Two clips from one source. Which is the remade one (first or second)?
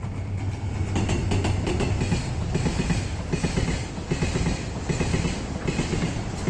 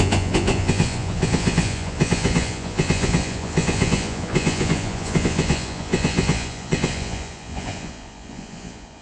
second